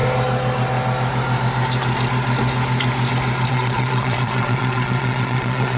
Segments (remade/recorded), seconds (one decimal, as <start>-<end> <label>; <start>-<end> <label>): 0.0-3.5 recorded; 3.5-5.8 remade